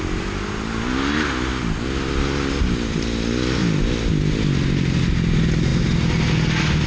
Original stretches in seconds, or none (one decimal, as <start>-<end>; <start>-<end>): 0.0-6.9